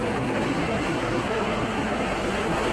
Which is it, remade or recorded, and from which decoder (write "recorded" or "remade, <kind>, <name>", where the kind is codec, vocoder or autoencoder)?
remade, codec, SNAC